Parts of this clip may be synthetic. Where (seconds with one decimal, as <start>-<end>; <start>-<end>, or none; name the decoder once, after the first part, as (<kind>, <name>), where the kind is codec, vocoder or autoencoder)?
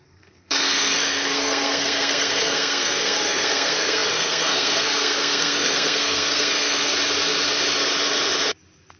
0.0-6.9 (codec, SNAC)